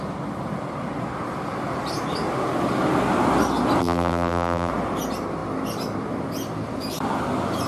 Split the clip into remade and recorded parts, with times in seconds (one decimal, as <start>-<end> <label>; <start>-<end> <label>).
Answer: 0.0-3.8 recorded; 3.8-4.7 remade; 4.7-7.7 recorded